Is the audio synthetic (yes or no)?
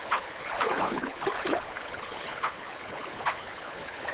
yes